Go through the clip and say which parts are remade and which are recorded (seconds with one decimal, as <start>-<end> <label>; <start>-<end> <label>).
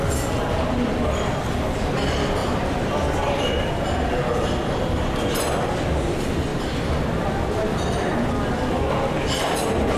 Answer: 0.0-2.4 recorded; 2.4-3.7 remade; 3.7-6.5 recorded; 6.5-7.1 remade; 7.1-10.0 recorded